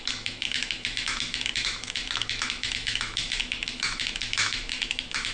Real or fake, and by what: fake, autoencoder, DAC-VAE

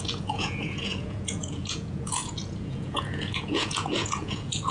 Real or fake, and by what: fake, vocoder, Vocos